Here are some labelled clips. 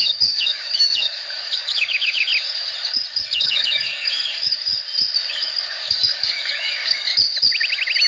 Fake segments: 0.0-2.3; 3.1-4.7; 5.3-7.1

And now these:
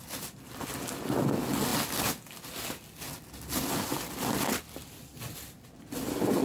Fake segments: none

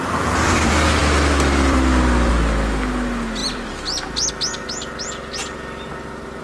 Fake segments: 1.0-2.3; 3.4-4.3

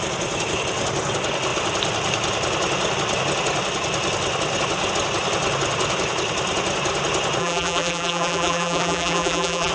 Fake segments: 7.4-9.7

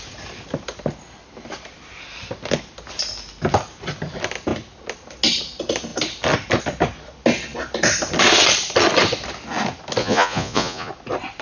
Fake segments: 10.0-10.9

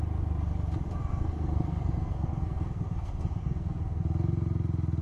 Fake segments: 1.0-4.0

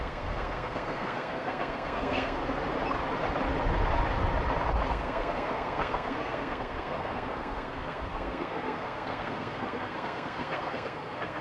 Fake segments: 0.0-2.4; 4.9-11.4

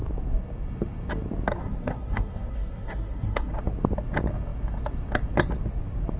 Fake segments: 1.6-3.5